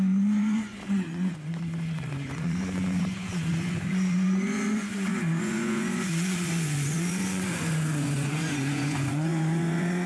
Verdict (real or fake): fake